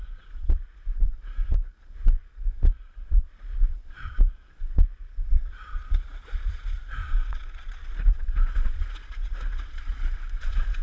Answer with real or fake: fake